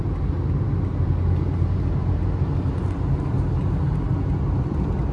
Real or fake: real